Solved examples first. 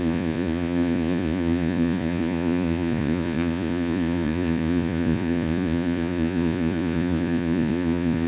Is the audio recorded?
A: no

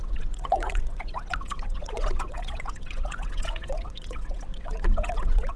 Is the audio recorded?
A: no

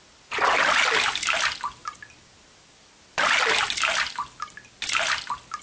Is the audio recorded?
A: yes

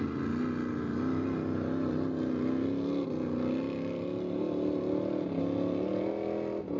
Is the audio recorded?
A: yes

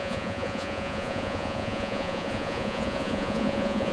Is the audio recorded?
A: no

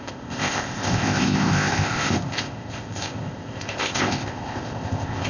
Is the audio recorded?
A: no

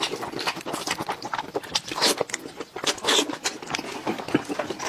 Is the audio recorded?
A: yes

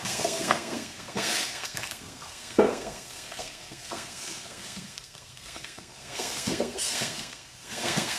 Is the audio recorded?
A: no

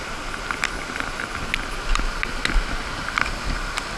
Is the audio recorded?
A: yes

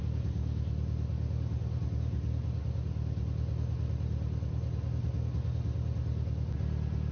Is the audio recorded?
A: yes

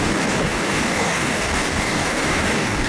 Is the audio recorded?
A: no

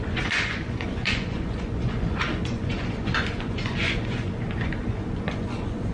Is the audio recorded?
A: no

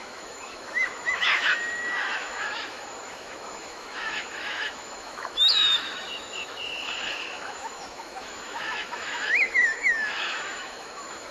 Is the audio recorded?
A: no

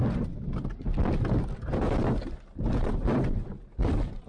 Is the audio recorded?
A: yes